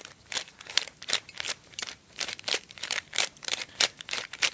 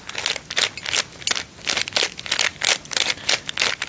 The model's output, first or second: first